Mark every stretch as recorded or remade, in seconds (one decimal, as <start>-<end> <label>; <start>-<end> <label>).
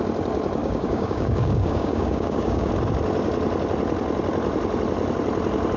0.0-0.6 recorded; 0.6-2.7 remade; 2.7-5.8 recorded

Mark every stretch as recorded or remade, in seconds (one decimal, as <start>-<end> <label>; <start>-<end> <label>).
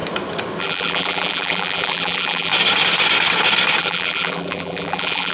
0.0-0.6 recorded; 0.6-2.5 remade; 2.5-3.8 recorded; 3.8-5.3 remade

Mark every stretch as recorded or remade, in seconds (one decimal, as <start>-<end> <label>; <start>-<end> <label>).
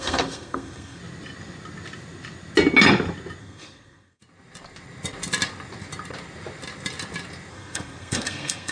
0.0-1.0 remade; 1.0-3.4 recorded; 3.4-4.2 remade; 4.2-7.5 recorded; 7.5-8.7 remade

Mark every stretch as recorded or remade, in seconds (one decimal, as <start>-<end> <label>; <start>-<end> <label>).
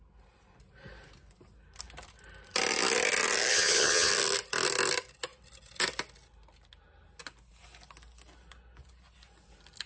0.0-3.5 recorded; 3.5-4.1 remade; 4.1-9.9 recorded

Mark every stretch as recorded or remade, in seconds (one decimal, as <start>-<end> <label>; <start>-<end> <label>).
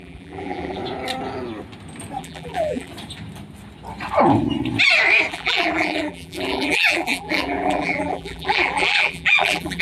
0.0-0.8 remade; 0.8-2.2 recorded; 2.2-2.9 remade; 2.9-5.3 recorded; 5.3-9.8 remade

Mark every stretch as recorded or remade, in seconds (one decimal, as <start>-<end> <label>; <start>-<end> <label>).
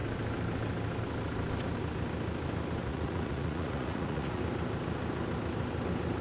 0.0-2.8 recorded; 2.8-4.4 remade; 4.4-6.2 recorded